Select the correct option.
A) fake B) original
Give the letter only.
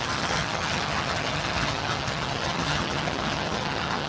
A